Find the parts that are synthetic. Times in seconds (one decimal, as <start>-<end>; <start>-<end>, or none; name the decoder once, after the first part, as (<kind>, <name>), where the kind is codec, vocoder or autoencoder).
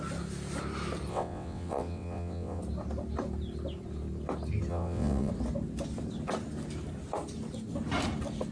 1.1-2.6 (vocoder, WaveNeXt); 4.7-5.3